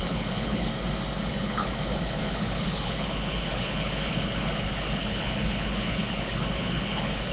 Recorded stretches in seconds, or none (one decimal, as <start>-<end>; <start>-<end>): 0.7-1.3